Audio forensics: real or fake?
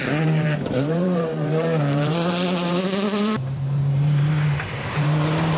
fake